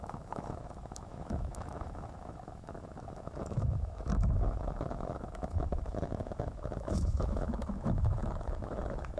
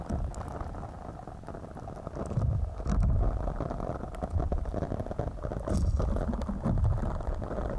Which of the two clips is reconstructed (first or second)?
first